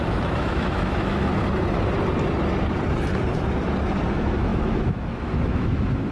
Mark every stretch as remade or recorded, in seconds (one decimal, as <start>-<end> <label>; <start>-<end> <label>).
0.0-1.3 remade; 1.3-4.1 recorded; 4.1-6.1 remade